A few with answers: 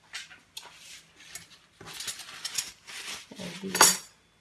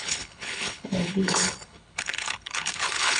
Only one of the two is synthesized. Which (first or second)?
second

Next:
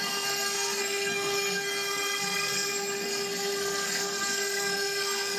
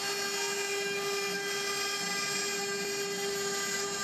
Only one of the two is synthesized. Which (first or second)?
first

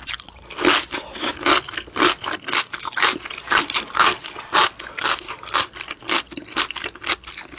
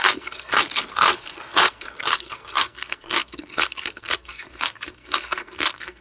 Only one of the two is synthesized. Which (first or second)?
second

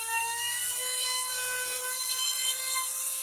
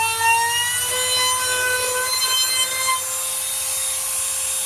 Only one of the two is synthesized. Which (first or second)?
first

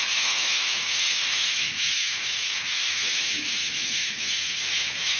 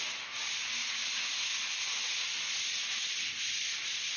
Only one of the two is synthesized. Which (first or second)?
first